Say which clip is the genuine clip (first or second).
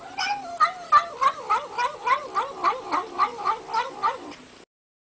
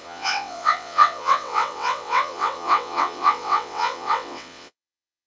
first